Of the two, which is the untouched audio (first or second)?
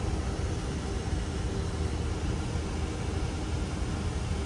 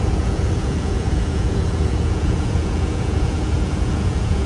first